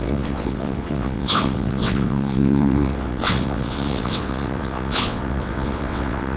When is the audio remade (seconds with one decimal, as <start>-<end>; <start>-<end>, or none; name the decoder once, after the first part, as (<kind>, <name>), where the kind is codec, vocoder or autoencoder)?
0.0-6.4 (vocoder, WaveNeXt)